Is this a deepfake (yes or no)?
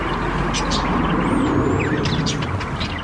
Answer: no